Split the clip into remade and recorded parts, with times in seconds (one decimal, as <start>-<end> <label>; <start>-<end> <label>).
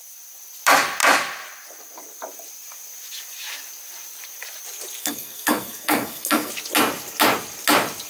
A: 0.0-5.0 recorded; 5.0-6.5 remade; 6.5-8.1 recorded